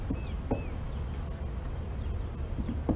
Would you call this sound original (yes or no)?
yes